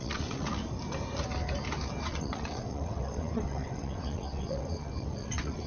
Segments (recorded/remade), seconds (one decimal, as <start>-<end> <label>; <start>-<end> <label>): 0.0-0.6 remade; 0.6-2.1 recorded; 2.1-5.7 remade